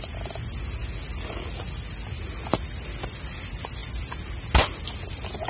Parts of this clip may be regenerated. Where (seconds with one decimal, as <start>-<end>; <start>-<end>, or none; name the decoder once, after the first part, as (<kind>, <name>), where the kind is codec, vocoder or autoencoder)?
none